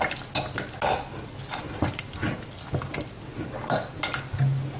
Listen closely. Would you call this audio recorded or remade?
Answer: recorded